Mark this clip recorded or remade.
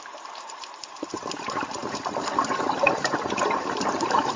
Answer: remade